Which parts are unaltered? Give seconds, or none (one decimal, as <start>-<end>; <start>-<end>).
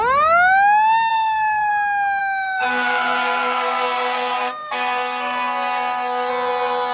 0.0-1.1; 1.7-2.2; 6.3-6.9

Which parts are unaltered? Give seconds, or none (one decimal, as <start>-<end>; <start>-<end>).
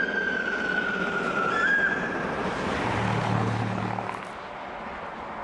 0.0-3.2; 3.8-5.4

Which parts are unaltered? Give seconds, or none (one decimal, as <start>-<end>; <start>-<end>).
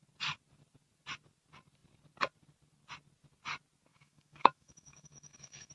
0.0-3.9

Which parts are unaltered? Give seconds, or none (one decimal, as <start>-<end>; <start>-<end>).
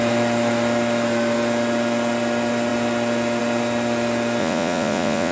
0.0-4.4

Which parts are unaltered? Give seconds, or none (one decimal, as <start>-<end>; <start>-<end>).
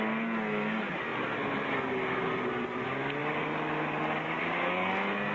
0.0-1.1; 1.7-3.2; 4.4-5.3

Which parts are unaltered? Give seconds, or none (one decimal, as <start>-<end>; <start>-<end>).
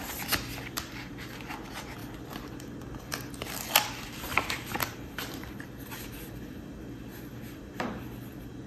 0.0-2.0; 3.7-4.3; 5.5-8.7